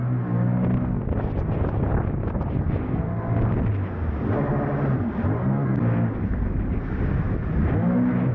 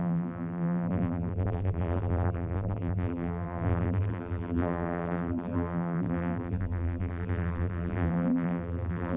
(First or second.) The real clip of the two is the first